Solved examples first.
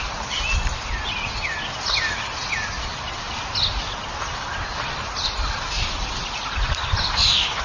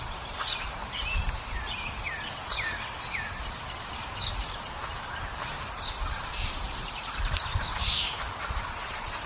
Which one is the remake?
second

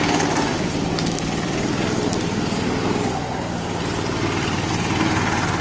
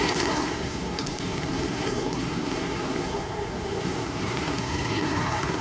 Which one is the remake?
second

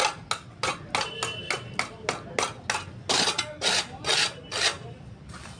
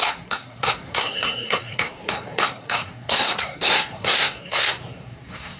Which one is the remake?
second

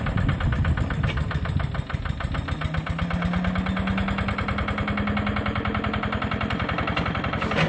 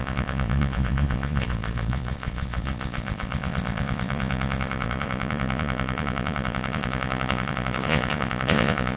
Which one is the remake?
second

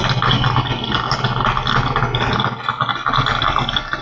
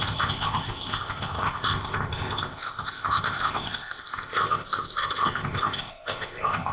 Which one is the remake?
second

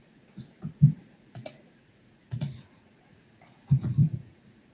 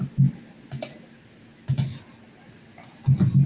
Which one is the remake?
first